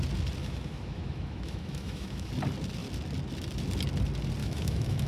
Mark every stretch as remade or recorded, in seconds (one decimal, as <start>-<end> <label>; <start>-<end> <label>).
0.0-0.4 recorded; 0.4-2.3 remade; 2.3-4.4 recorded; 4.4-5.1 remade